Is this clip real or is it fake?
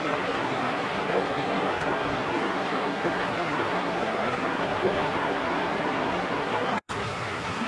fake